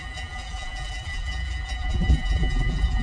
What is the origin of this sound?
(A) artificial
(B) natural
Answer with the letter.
A